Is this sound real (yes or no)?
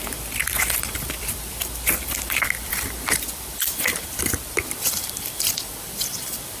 no